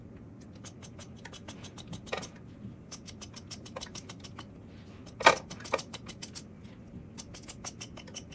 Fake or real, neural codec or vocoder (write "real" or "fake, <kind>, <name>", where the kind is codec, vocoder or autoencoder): real